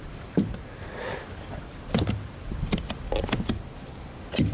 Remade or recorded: recorded